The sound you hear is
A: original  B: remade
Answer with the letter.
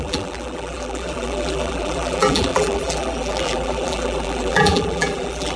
B